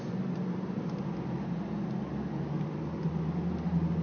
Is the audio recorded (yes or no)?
yes